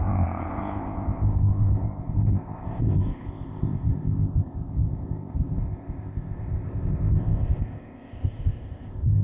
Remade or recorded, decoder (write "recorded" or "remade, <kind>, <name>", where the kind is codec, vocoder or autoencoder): remade, codec, ZipCodec